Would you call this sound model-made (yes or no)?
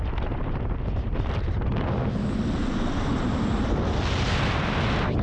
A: no